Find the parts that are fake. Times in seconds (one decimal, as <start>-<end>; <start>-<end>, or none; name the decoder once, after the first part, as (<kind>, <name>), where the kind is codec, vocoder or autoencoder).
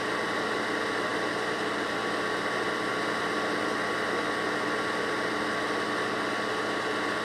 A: none